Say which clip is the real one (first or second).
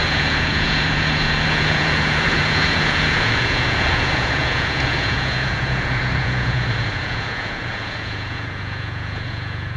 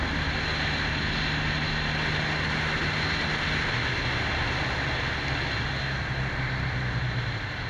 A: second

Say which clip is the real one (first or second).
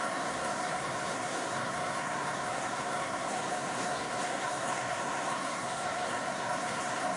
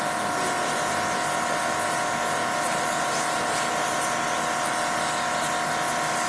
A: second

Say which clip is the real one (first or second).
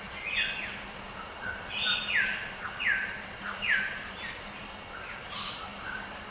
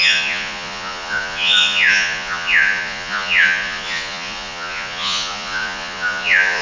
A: first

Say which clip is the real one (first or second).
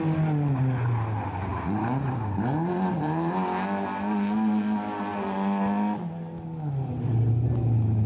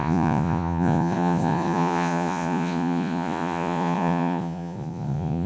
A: first